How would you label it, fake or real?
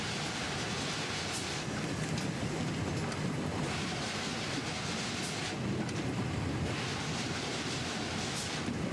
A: real